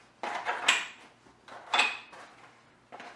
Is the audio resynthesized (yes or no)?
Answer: no